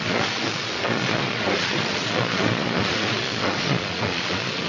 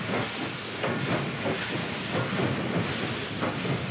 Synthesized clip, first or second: first